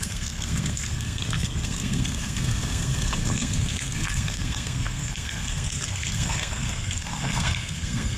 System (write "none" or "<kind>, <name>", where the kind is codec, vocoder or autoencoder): codec, SNAC